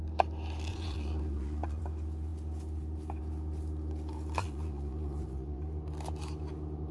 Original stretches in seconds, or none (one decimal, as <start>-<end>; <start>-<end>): 0.0-0.7; 1.8-4.4; 5.7-6.9